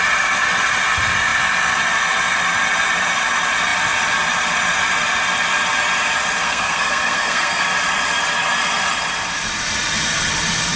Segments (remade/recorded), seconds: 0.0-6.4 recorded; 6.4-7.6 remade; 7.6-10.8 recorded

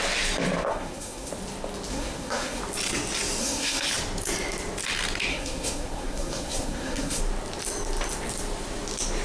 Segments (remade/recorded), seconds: 0.0-0.7 recorded; 0.7-1.3 remade; 1.3-1.9 recorded; 1.9-2.6 remade; 2.6-3.4 recorded; 3.4-3.9 remade; 3.9-5.3 recorded; 5.3-7.2 remade; 7.2-9.2 recorded

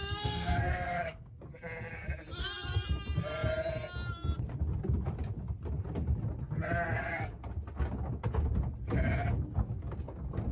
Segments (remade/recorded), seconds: 0.0-1.4 remade; 1.4-10.5 recorded

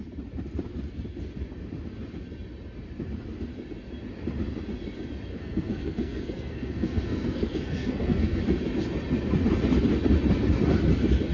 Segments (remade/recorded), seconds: 0.0-5.3 recorded; 5.3-8.4 remade; 8.4-11.3 recorded

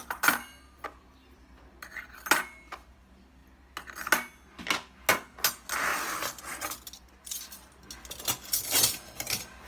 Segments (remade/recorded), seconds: 0.0-9.7 recorded

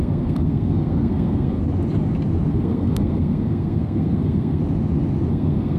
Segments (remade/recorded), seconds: 0.0-1.6 remade; 1.6-2.5 recorded; 2.5-4.6 remade; 4.6-5.3 recorded; 5.3-5.8 remade